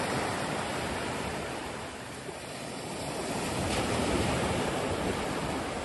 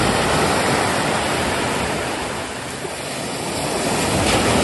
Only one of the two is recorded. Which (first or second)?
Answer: second